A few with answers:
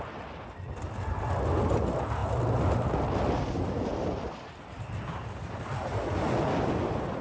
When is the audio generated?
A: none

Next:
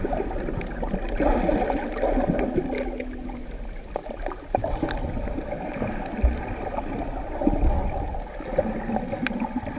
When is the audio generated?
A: none